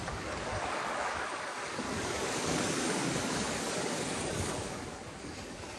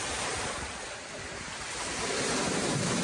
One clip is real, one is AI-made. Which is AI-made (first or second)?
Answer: first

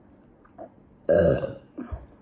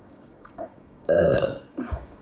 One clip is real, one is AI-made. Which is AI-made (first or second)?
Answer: second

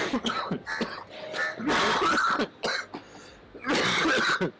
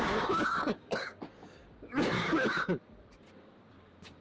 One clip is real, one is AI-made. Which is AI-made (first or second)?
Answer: second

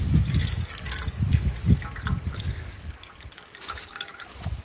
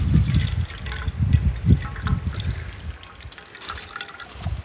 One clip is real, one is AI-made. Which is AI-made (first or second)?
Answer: first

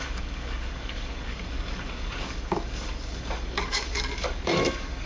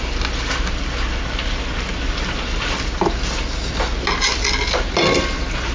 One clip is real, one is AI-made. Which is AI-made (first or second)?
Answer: first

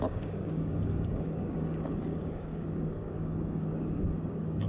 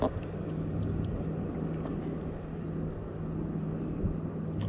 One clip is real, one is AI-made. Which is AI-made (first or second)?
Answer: first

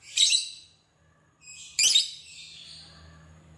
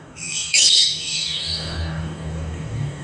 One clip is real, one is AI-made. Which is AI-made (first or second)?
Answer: second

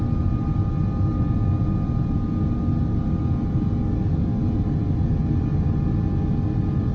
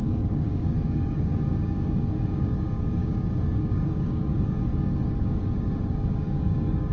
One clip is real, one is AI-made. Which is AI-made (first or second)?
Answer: second